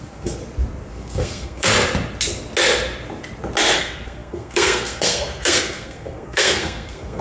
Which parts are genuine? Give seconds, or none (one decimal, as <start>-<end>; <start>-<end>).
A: 0.4-0.9; 1.7-3.8